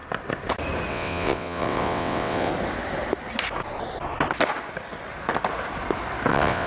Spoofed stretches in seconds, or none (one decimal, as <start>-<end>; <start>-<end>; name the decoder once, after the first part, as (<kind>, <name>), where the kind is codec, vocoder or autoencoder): 0.9-2.5 (vocoder, WaveNeXt); 6.3-6.7